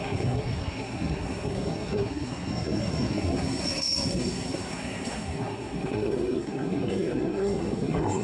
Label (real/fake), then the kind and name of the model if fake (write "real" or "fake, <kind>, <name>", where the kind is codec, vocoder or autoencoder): fake, codec, SNAC